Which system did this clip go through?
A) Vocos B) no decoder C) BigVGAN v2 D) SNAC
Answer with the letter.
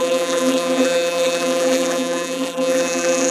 C